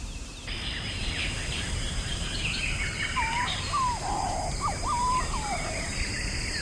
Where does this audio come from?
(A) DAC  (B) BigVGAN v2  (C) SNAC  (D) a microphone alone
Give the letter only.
B